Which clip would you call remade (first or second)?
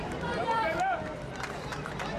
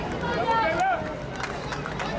first